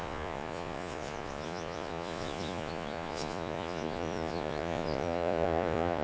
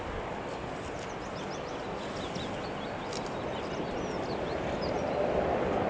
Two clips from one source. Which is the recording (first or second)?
second